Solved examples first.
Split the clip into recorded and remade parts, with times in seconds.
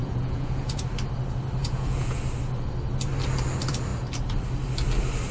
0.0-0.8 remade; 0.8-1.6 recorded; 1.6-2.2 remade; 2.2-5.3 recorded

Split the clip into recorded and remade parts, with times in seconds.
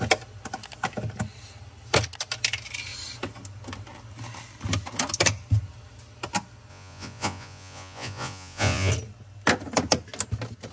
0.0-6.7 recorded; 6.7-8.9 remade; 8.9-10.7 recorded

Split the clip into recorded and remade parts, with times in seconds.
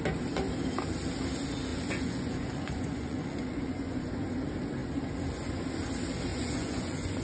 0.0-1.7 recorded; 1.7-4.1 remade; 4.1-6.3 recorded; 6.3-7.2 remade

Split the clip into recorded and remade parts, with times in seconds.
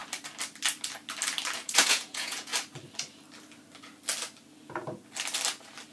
0.0-1.6 recorded; 1.6-2.5 remade; 2.5-5.9 recorded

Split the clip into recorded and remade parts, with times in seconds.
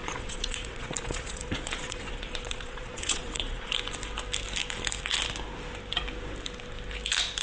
0.0-3.7 remade; 3.7-7.4 recorded